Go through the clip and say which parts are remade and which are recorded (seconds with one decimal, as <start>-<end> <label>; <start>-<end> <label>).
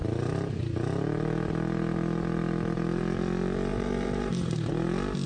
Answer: 0.0-3.7 recorded; 3.7-4.7 remade; 4.7-5.3 recorded